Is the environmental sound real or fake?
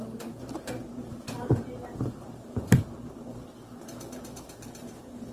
fake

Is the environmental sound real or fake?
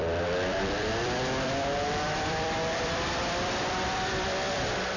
fake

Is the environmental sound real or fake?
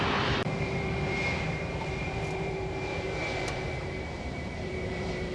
fake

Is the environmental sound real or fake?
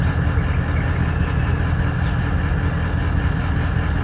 real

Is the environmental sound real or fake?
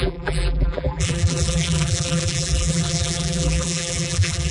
fake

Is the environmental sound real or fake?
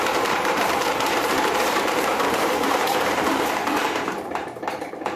fake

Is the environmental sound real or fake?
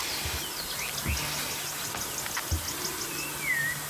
real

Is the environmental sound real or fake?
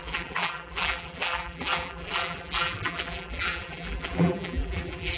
fake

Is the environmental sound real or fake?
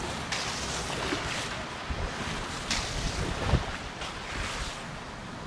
real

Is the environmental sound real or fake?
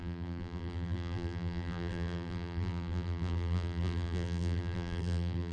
fake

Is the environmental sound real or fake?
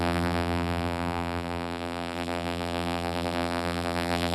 fake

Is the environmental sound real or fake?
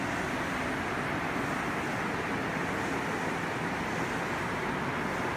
real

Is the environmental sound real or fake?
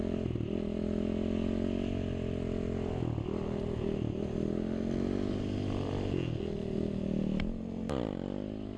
real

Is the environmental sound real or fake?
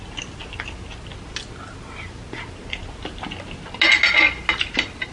real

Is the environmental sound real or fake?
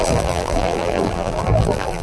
fake